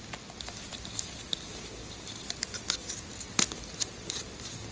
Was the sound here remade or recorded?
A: recorded